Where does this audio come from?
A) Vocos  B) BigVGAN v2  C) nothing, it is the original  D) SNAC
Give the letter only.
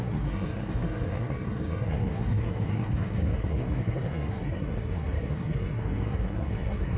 D